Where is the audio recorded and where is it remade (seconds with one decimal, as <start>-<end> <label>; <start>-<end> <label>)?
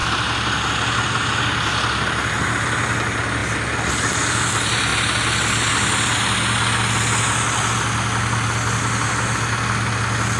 0.0-10.4 recorded